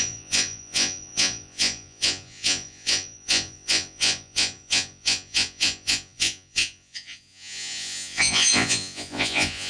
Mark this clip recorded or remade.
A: remade